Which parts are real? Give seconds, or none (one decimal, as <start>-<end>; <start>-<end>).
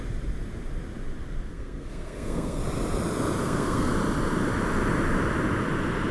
0.0-1.5; 2.6-3.4; 3.9-6.1